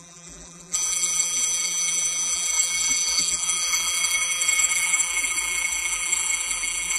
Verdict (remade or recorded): remade